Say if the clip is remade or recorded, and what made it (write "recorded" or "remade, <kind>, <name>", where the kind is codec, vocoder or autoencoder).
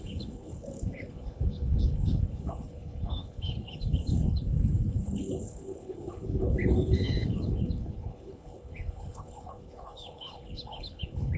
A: remade, codec, HILCodec